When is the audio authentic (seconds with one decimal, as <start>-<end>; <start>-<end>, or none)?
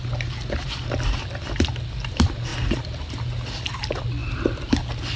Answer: 0.0-5.2